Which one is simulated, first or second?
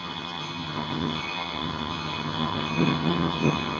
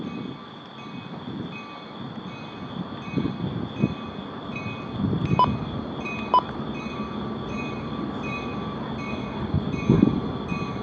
first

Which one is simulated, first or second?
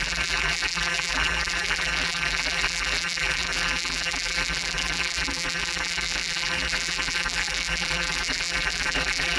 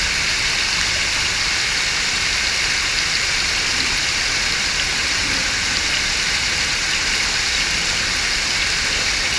first